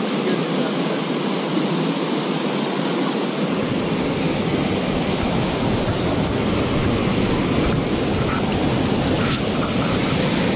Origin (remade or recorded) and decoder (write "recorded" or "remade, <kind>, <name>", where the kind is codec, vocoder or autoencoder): recorded